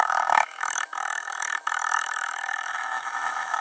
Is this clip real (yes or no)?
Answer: no